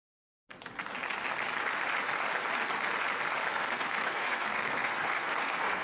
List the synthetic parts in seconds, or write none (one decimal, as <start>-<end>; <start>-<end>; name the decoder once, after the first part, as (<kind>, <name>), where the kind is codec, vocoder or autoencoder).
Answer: 3.5-5.8 (codec, SNAC)